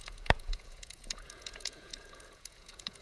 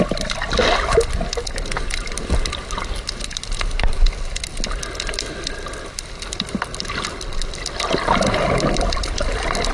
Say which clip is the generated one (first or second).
first